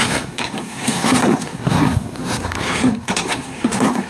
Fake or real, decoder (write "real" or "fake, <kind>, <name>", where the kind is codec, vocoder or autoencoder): fake, codec, SNAC